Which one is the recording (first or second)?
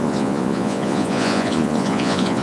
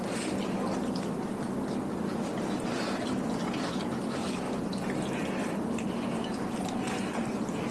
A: second